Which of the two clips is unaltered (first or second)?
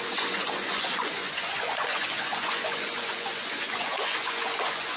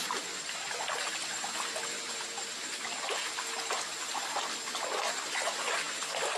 second